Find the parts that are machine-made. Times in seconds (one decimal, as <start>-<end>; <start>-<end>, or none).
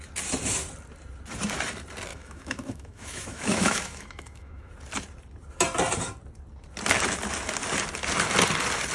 2.1-4.7